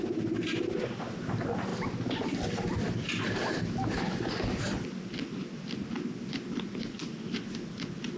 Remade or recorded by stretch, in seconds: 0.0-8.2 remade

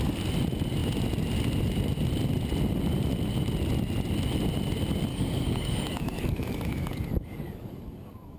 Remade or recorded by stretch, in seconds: 0.0-5.1 recorded; 5.1-8.4 remade

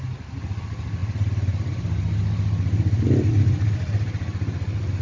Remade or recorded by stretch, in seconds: 0.0-5.0 recorded